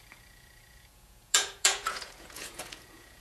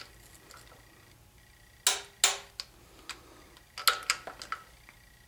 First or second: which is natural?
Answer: second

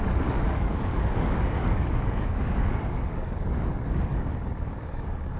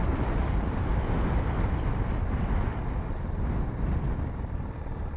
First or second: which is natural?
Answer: second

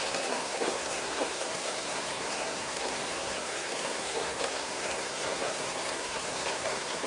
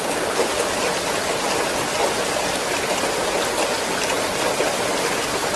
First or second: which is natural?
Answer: second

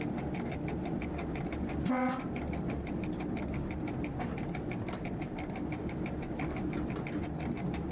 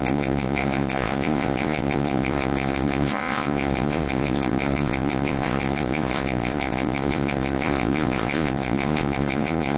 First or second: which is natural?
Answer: first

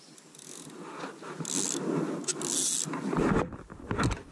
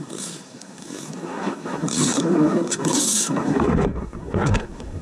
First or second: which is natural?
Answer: first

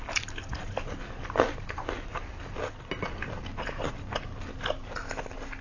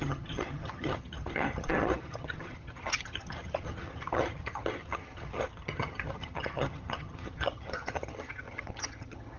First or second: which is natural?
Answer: first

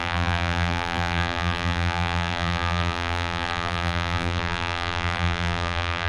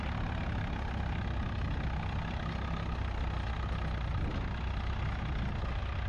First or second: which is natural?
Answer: second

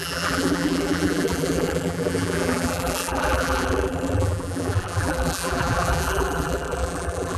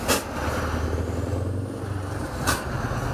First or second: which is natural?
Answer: second